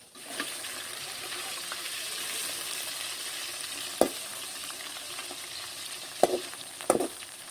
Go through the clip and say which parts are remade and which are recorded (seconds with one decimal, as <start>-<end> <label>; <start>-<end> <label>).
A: 0.0-0.6 remade; 0.6-1.3 recorded; 1.3-2.4 remade; 2.4-4.3 recorded; 4.3-5.2 remade; 5.2-6.0 recorded; 6.0-7.5 remade